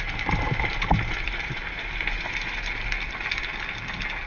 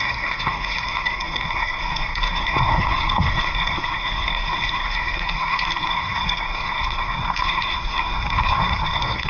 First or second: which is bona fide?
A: first